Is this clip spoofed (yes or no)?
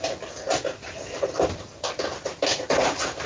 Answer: no